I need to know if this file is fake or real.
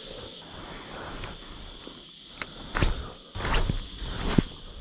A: real